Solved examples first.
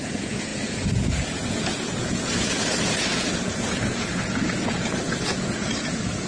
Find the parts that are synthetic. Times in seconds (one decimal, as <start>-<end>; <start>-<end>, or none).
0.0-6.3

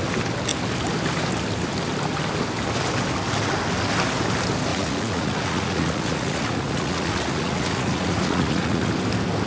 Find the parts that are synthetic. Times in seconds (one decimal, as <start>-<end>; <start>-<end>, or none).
4.7-8.9

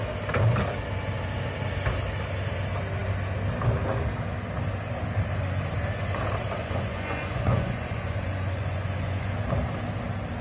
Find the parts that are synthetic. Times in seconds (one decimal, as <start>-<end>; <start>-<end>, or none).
6.6-9.3